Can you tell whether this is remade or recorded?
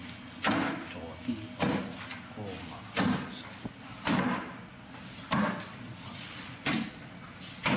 recorded